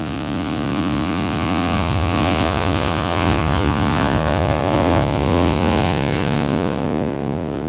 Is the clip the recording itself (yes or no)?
no